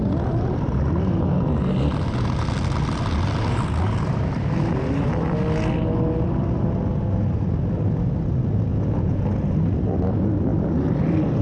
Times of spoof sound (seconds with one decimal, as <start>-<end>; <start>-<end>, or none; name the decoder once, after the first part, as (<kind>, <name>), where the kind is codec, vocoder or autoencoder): 8.7-9.3 (vocoder, Vocos)